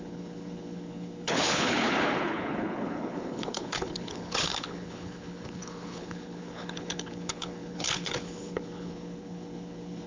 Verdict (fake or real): fake